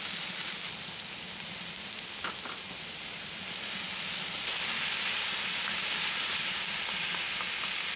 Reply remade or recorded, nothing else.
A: recorded